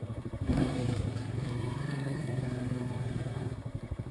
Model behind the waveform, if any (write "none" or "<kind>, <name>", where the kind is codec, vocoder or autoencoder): codec, SNAC